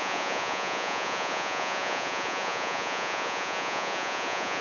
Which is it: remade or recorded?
remade